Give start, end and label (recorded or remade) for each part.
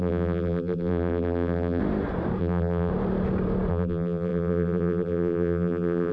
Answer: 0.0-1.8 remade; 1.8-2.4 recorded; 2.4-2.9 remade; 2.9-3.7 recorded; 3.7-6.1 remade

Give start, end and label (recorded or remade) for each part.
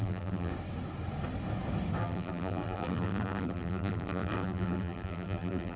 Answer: 0.0-0.5 remade; 0.5-2.0 recorded; 2.0-5.8 remade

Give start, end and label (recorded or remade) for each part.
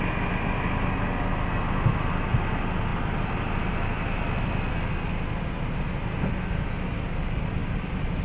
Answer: 0.0-2.9 recorded; 2.9-5.1 remade; 5.1-7.6 recorded; 7.6-8.2 remade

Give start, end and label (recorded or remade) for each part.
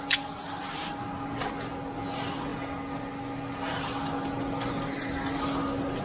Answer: 0.0-6.0 recorded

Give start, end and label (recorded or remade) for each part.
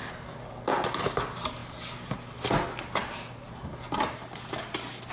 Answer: 0.0-5.1 recorded